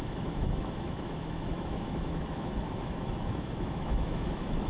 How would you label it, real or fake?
fake